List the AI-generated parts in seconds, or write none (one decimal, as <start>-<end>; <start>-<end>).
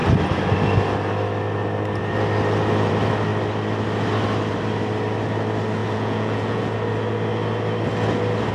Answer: 5.8-6.6